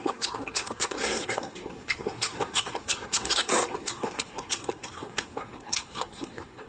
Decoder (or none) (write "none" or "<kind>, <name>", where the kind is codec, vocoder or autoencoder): codec, SNAC